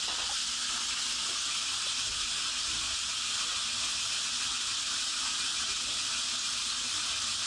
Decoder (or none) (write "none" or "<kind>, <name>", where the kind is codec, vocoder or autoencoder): none